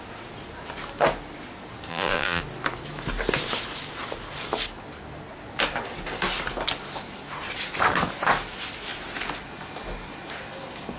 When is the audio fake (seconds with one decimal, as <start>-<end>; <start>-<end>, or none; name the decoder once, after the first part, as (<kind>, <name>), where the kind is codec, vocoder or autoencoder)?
1.9-2.4 (vocoder, BigVGAN v2)